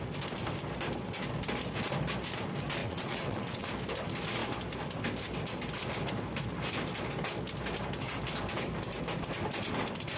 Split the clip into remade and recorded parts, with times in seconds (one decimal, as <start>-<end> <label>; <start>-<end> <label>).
0.0-2.8 recorded; 2.8-3.7 remade; 3.7-10.2 recorded